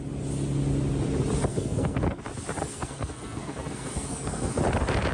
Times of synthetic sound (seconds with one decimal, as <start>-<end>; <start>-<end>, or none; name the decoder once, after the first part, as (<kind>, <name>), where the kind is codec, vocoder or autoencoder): 1.5-2.2 (codec, SNAC); 2.6-4.6

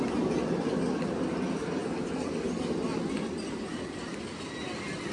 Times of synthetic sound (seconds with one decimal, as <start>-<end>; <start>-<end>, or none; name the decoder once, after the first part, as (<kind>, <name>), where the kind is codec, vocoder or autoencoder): none

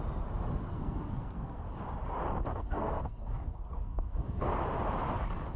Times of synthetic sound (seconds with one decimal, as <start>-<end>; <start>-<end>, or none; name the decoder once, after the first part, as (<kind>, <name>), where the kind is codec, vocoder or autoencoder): 0.7-1.7 (codec, SNAC); 2.5-4.5

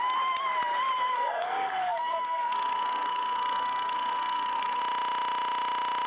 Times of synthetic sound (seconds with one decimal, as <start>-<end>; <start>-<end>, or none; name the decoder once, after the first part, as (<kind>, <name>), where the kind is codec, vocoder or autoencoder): 1.1-4.8 (codec, SNAC)

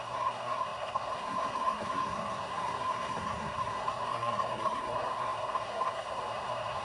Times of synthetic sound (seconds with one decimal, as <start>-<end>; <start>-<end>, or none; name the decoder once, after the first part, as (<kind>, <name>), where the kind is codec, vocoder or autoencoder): 0.0-6.8 (codec, SNAC)

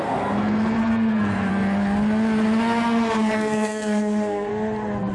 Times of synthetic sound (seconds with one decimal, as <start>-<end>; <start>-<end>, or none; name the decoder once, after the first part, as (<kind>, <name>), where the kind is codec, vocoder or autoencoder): 0.0-1.5 (codec, SNAC); 3.3-4.5

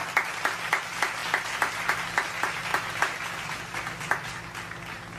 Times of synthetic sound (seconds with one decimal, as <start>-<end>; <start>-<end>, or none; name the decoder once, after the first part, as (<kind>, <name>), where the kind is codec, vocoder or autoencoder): none